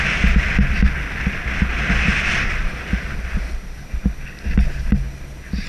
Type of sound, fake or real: real